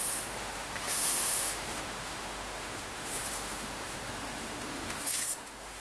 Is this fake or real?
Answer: fake